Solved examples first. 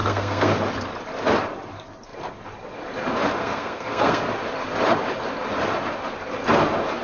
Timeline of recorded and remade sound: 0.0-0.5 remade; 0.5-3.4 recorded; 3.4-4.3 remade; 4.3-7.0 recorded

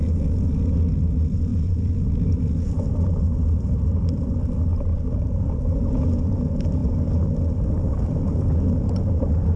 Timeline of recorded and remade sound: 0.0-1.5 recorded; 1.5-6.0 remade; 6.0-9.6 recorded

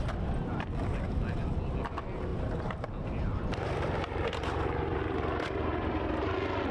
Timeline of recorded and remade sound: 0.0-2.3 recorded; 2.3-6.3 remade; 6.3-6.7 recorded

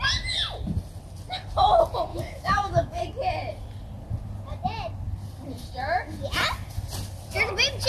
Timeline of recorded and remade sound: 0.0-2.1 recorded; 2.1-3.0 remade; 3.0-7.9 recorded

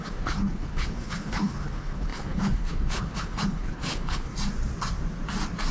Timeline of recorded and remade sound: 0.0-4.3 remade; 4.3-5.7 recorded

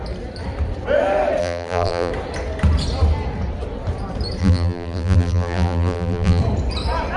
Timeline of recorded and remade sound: 0.0-1.4 recorded; 1.4-2.1 remade; 2.1-4.4 recorded; 4.4-6.4 remade; 6.4-7.2 recorded